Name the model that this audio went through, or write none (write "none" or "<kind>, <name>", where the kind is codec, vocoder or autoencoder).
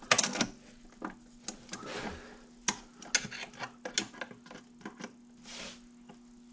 none